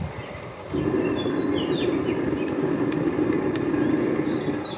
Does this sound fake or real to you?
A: real